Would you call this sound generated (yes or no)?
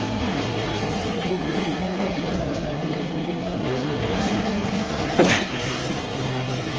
yes